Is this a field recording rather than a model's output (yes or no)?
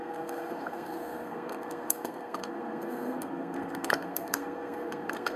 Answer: no